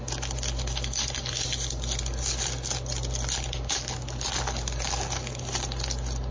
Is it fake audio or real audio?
real